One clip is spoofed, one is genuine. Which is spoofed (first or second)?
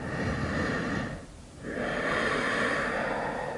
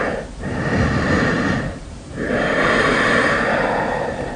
second